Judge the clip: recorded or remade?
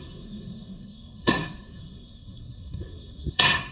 remade